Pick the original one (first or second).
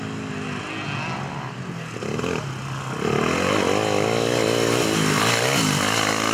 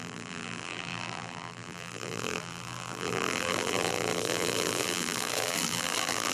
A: first